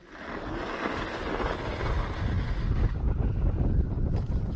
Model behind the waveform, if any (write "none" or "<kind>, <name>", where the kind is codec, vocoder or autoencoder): none